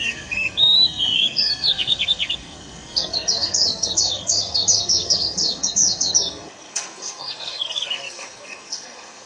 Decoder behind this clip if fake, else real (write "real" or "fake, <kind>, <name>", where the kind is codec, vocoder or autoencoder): fake, codec, SNAC